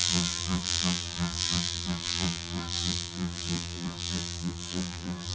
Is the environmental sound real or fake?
fake